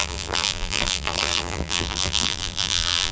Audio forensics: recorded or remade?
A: remade